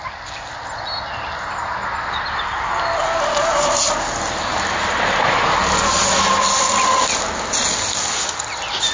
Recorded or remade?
recorded